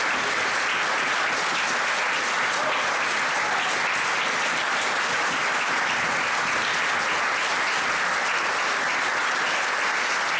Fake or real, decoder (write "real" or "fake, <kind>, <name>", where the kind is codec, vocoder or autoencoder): real